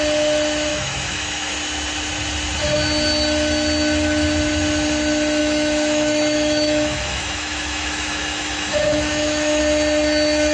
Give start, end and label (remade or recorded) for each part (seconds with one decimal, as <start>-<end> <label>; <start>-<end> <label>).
0.0-0.7 recorded; 0.7-1.5 remade; 1.5-5.4 recorded; 5.4-9.6 remade; 9.6-10.5 recorded